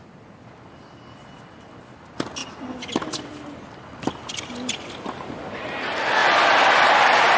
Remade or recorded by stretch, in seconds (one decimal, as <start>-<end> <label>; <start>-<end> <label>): 0.0-7.4 recorded